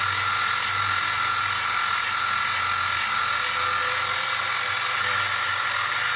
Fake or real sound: real